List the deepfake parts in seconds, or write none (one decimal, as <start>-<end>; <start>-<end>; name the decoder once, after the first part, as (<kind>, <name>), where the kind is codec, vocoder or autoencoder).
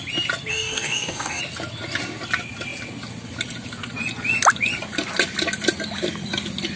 0.5-1.4 (codec, DAC)